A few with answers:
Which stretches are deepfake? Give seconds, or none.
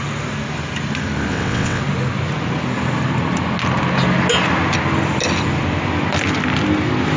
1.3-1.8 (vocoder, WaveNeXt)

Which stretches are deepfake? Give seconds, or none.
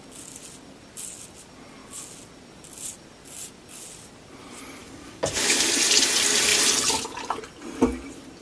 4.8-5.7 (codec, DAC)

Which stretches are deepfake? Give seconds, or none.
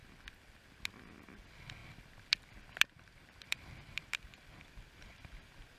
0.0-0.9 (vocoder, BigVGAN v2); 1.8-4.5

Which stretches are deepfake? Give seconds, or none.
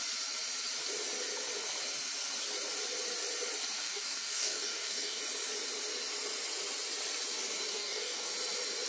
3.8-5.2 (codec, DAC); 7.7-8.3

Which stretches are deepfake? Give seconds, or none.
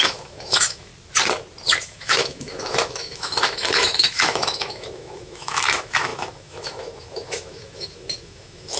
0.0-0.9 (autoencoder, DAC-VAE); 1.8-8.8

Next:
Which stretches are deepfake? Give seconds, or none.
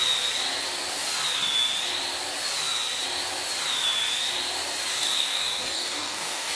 4.9-6.5 (codec, DAC)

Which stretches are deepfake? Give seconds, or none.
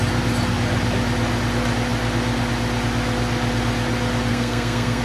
4.3-5.0 (codec, SNAC)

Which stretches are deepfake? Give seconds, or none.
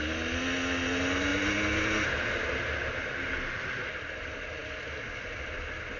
none